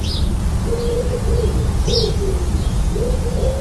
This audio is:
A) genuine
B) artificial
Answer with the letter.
B